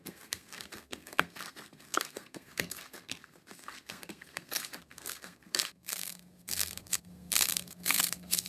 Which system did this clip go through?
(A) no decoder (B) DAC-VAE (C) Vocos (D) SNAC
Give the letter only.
D